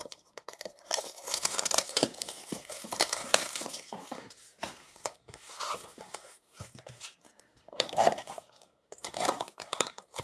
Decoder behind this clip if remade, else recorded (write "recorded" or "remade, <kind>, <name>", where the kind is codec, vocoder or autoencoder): remade, codec, SNAC